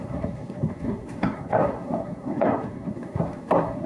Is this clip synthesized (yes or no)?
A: yes